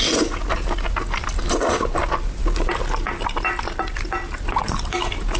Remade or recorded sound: recorded